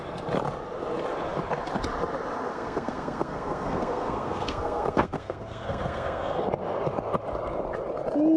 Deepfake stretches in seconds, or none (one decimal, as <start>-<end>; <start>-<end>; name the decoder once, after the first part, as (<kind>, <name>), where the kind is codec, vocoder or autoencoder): 2.5-6.4 (codec, SNAC)